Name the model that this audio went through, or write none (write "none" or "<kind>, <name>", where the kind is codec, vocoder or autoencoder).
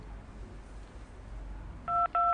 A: none